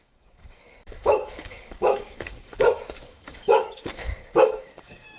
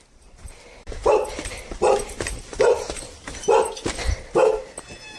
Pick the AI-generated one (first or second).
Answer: first